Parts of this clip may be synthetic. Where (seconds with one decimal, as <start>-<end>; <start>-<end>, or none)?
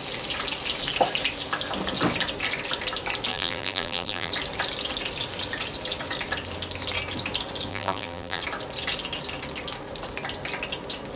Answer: 3.3-4.3; 7.7-8.4